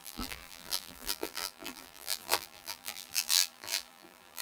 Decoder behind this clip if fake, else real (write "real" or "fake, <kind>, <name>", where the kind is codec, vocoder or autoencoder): fake, vocoder, BigVGAN v2